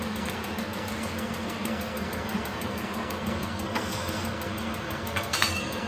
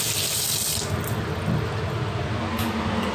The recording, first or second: second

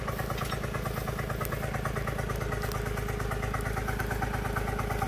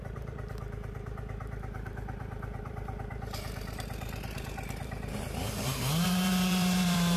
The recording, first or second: first